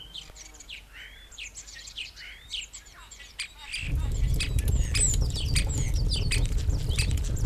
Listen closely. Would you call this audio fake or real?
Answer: fake